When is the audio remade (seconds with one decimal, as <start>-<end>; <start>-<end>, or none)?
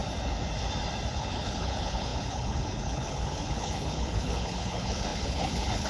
1.1-5.9